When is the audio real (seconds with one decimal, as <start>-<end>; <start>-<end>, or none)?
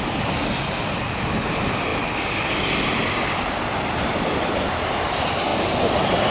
0.0-6.3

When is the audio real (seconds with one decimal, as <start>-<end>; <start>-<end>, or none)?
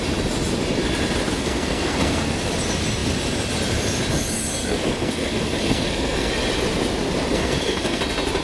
0.0-1.4; 2.5-4.6; 6.3-7.3; 8.0-8.4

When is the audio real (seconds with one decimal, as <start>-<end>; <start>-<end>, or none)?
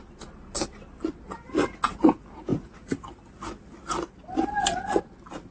0.0-5.5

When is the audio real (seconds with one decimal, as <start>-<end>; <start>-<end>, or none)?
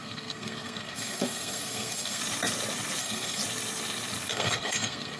2.2-3.0; 3.4-4.3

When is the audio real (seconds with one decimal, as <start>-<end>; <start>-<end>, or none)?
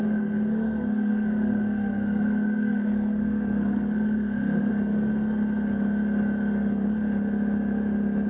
4.7-8.3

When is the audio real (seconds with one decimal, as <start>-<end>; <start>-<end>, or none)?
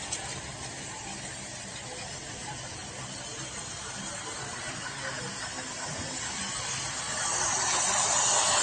0.0-8.6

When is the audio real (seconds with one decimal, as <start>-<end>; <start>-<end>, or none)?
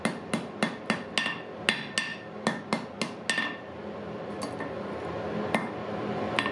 0.0-6.5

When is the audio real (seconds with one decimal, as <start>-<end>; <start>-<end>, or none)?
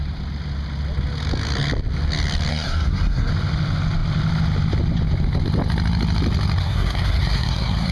0.0-2.5; 3.3-6.6